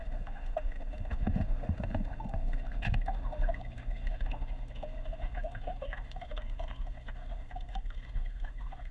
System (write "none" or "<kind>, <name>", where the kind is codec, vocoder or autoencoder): autoencoder, DAC-VAE